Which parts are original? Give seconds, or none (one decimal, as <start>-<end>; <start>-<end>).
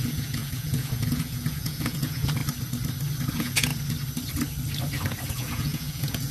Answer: 2.4-3.3; 3.7-5.3